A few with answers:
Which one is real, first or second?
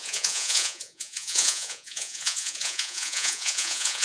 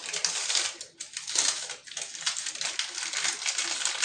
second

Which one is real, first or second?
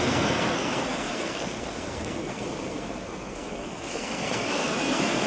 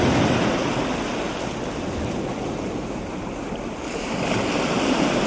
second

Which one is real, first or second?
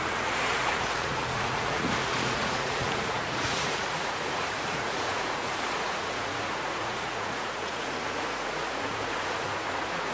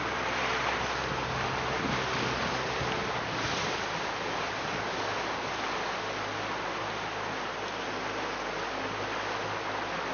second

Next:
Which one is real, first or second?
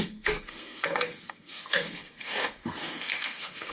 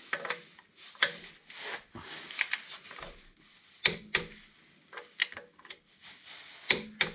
second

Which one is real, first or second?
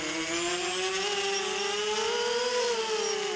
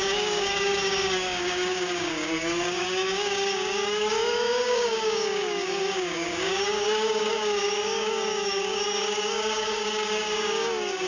first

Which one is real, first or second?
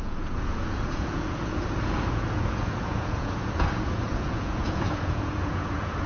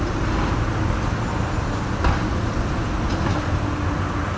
second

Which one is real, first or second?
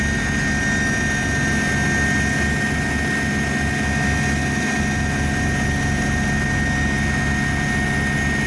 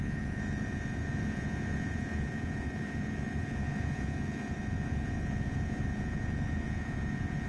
first